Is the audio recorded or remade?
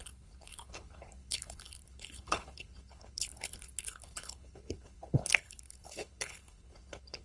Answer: remade